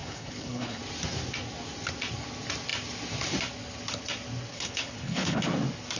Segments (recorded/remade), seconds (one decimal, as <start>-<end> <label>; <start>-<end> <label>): 0.0-0.8 remade; 0.8-4.5 recorded; 4.5-5.4 remade; 5.4-6.0 recorded